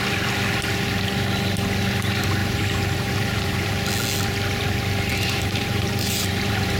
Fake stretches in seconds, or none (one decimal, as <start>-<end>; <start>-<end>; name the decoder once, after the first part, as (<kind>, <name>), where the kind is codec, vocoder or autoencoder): 2.4-3.9 (vocoder, BigVGAN v2); 5.1-6.8